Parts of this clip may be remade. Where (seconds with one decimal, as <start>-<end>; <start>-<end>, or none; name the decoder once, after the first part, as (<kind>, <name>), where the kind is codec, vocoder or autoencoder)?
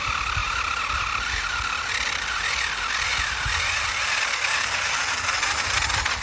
none